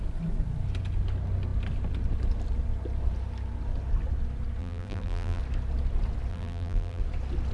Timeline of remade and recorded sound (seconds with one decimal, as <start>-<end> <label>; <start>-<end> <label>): 0.0-4.6 recorded; 4.6-5.4 remade; 5.4-6.3 recorded; 6.3-7.0 remade; 7.0-7.5 recorded